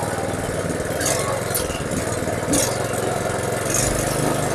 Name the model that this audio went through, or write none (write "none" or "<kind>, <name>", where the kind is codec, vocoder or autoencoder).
none